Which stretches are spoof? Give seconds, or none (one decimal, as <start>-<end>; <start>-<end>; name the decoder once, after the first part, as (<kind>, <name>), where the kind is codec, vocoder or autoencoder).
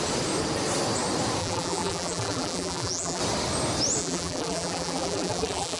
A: 1.4-3.2 (vocoder, BigVGAN v2); 4.0-5.8